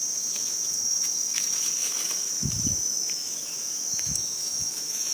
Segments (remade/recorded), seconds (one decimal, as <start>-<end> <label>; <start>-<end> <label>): 0.0-5.1 remade